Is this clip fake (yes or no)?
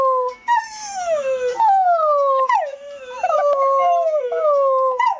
yes